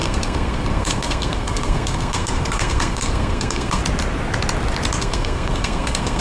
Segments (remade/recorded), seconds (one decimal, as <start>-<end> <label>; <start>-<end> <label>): 0.0-3.8 remade; 3.8-5.0 recorded; 5.0-6.2 remade